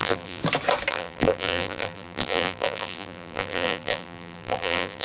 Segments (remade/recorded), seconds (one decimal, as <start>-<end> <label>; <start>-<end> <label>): 0.0-0.4 remade; 0.4-0.9 recorded; 0.9-5.0 remade